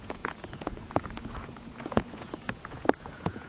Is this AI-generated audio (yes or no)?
yes